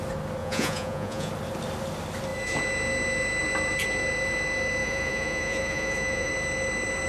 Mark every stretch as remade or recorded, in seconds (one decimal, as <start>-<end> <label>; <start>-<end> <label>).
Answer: 0.0-0.4 recorded; 0.4-1.3 remade; 1.3-4.8 recorded; 4.8-6.3 remade; 6.3-7.1 recorded